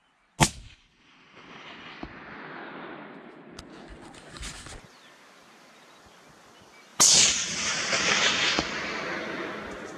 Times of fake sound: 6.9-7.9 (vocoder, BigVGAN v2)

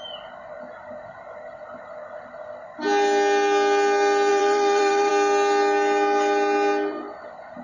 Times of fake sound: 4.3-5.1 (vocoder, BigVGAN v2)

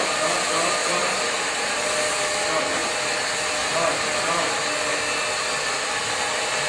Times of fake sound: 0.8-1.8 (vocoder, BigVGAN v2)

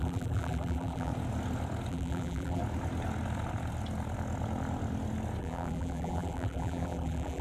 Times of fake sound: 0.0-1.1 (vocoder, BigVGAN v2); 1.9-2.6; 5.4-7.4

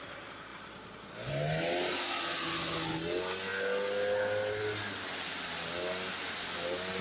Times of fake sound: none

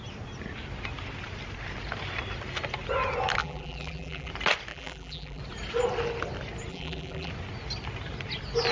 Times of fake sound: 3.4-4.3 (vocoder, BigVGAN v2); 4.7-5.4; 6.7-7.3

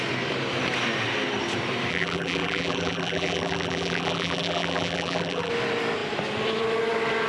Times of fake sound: 1.9-5.5 (vocoder, BigVGAN v2)

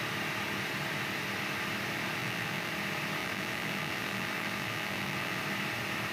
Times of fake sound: 2.2-2.7 (vocoder, BigVGAN v2); 3.2-5.4